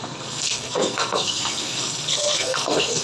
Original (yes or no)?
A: no